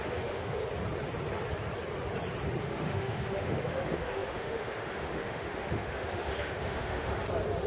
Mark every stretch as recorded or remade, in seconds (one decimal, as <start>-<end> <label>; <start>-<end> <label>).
0.0-0.6 remade; 0.6-2.6 recorded; 2.6-7.1 remade; 7.1-7.7 recorded